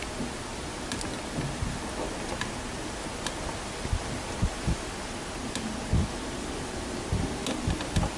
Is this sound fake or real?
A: real